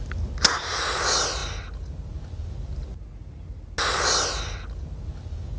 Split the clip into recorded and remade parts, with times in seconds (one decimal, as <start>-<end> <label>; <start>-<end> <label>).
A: 0.0-5.6 recorded